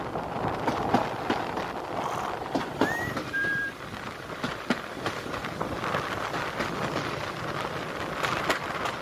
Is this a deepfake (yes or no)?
no